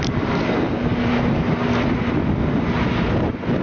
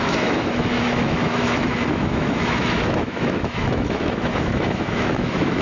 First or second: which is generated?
second